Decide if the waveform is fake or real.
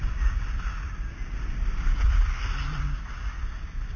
real